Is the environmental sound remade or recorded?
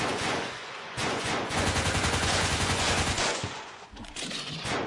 remade